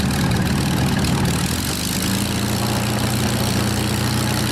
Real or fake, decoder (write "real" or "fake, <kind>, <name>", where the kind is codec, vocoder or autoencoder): real